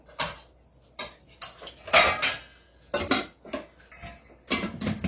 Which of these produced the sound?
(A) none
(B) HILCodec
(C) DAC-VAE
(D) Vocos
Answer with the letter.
A